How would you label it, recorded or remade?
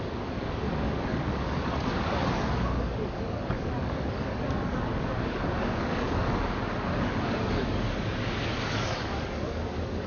remade